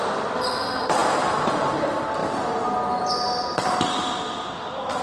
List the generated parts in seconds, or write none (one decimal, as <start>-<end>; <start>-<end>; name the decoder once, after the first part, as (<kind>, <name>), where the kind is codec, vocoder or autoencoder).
0.0-2.2 (vocoder, BigVGAN v2); 3.0-5.0